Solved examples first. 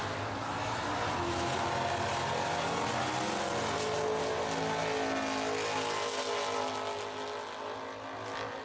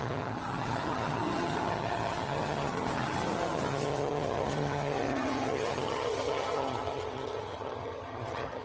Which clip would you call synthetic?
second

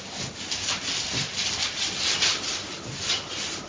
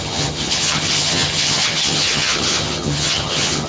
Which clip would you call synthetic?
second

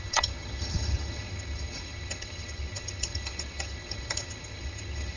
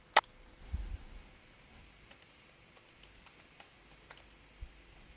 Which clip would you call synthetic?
first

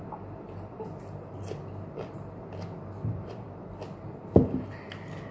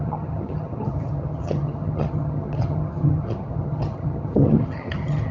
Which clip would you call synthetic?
second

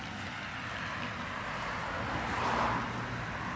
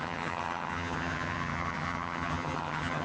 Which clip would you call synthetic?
second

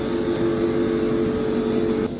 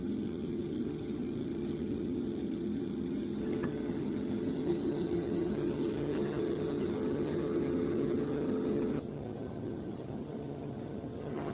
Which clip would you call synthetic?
second